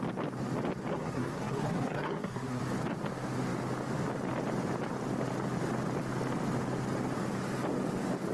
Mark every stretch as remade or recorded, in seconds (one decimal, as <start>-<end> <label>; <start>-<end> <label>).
0.0-0.9 recorded; 0.9-2.6 remade; 2.6-8.3 recorded